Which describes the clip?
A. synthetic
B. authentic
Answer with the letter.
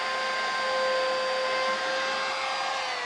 B